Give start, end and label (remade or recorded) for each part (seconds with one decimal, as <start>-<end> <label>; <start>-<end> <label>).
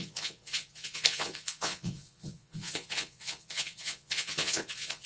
0.0-5.1 remade